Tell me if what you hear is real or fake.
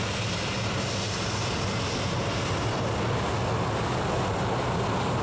real